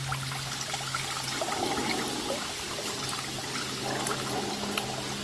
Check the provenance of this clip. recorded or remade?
recorded